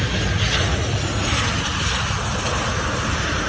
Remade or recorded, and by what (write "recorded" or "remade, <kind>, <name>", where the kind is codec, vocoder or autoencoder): recorded